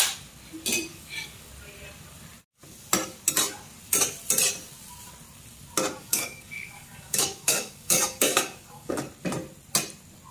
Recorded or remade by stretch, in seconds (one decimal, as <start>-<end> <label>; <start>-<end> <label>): 0.0-0.9 recorded; 0.9-1.5 remade; 1.5-6.0 recorded; 6.0-9.0 remade; 9.0-10.3 recorded